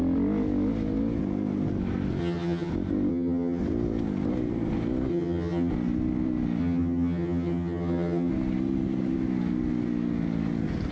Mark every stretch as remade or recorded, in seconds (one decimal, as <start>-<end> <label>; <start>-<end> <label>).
0.0-2.2 recorded; 2.2-2.7 remade; 2.7-3.1 recorded; 3.1-3.6 remade; 3.6-5.1 recorded; 5.1-5.7 remade; 5.7-6.6 recorded; 6.6-8.3 remade; 8.3-10.9 recorded